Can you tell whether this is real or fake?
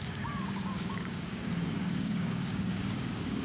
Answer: fake